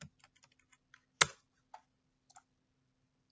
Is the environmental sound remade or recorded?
recorded